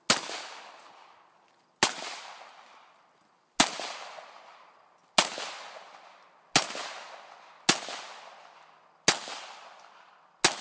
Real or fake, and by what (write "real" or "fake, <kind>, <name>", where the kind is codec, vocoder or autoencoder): real